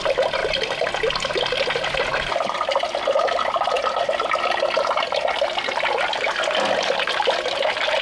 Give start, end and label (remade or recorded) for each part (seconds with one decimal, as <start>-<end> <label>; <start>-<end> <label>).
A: 0.0-8.0 recorded